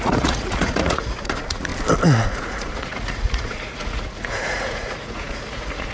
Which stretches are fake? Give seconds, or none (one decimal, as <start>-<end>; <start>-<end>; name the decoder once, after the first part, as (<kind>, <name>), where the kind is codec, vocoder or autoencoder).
0.0-1.7 (vocoder, Vocos); 2.3-5.9